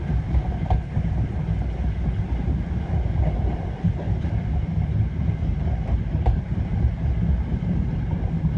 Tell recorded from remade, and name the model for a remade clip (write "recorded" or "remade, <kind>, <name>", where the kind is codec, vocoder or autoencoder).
recorded